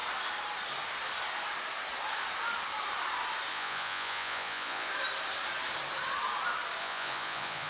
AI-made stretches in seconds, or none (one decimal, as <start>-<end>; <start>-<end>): 3.5-4.9; 6.8-7.7